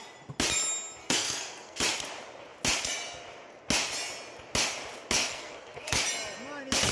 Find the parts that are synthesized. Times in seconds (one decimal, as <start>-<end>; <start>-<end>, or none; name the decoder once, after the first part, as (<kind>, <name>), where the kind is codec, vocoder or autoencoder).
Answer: 1.0-1.8 (codec, SNAC); 5.2-6.0